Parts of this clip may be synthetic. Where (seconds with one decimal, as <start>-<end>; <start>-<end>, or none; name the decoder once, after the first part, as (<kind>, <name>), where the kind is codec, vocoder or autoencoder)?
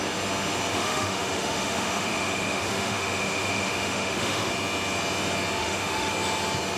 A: 0.7-4.5 (autoencoder, DAC-VAE); 5.6-6.1